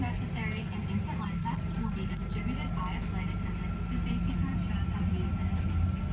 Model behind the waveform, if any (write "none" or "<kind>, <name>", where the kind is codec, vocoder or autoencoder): none